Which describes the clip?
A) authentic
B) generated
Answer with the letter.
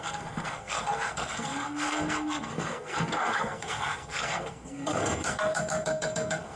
B